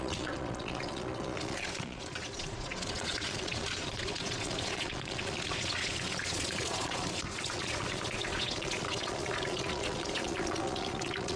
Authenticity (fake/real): fake